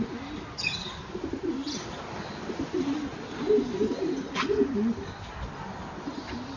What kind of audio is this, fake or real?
real